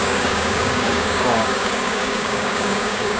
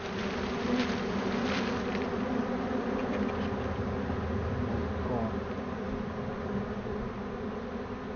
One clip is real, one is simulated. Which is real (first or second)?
second